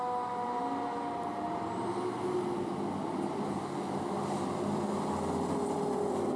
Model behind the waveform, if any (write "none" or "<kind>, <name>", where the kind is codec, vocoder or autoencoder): none